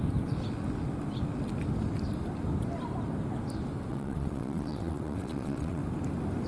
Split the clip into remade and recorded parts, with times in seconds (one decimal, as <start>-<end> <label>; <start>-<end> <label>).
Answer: 0.0-3.9 recorded; 3.9-5.8 remade; 5.8-6.5 recorded